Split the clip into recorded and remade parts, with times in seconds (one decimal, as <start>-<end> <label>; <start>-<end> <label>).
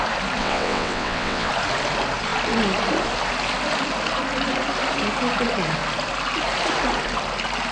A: 0.0-0.4 recorded; 0.4-1.5 remade; 1.5-7.7 recorded